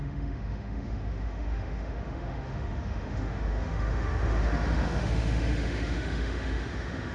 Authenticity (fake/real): fake